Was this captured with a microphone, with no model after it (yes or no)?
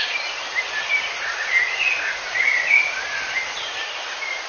no